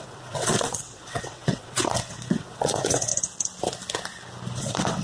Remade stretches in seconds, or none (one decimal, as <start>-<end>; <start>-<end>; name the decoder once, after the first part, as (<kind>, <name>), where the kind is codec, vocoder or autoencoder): 0.0-3.1 (vocoder, WaveNeXt); 4.6-5.0